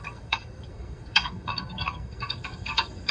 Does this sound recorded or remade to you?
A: remade